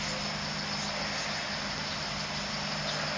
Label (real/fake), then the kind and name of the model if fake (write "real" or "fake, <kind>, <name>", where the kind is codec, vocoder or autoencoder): real